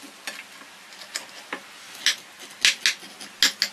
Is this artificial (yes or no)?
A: no